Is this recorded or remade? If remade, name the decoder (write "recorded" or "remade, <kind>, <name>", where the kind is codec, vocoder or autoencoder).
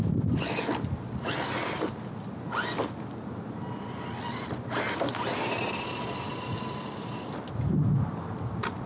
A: recorded